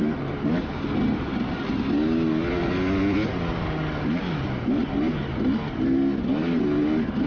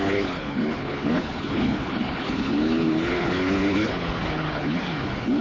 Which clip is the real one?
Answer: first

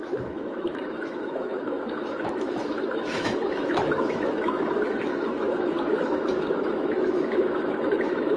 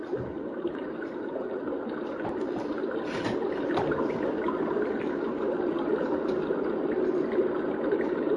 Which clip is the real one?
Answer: second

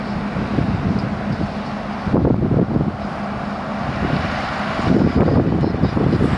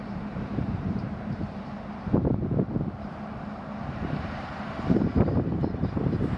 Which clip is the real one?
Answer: first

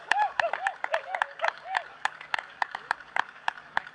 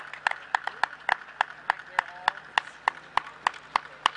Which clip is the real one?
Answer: second